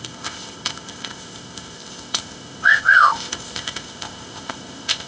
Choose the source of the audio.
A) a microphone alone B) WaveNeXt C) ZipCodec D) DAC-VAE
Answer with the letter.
C